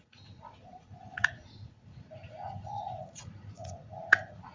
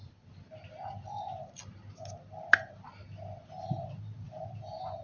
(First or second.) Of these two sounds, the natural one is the second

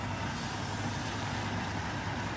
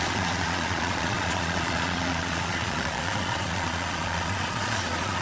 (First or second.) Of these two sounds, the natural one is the first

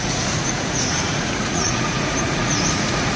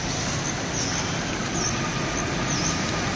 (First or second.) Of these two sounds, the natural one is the second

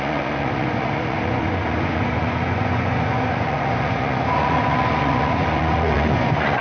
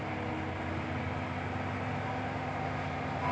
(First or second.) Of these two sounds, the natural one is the second